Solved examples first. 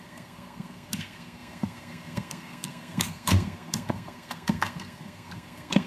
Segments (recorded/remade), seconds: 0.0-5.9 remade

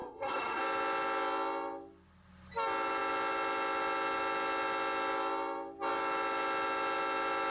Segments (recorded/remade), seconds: 0.0-0.6 remade; 0.6-7.5 recorded

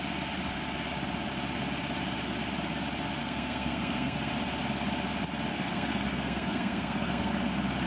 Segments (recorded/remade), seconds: 0.0-3.2 recorded; 3.2-4.3 remade; 4.3-5.5 recorded; 5.5-7.3 remade; 7.3-7.9 recorded

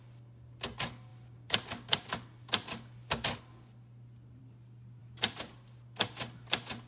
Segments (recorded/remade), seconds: 0.0-6.9 recorded

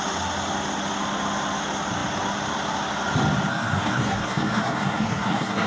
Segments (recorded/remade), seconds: 0.0-3.5 recorded; 3.5-5.7 remade

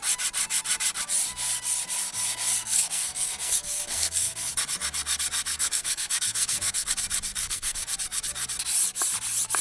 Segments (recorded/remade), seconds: 0.0-2.5 recorded; 2.5-4.5 remade; 4.5-5.5 recorded; 5.5-6.9 remade; 6.9-7.4 recorded; 7.4-7.9 remade; 7.9-9.6 recorded

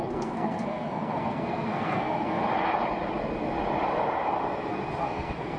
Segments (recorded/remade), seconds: 0.0-2.4 remade; 2.4-5.0 recorded; 5.0-5.6 remade

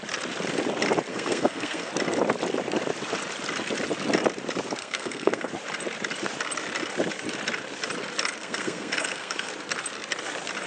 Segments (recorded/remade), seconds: 0.0-1.1 recorded; 1.1-1.9 remade; 1.9-4.8 recorded; 4.8-5.5 remade; 5.5-8.4 recorded; 8.4-9.5 remade; 9.5-10.7 recorded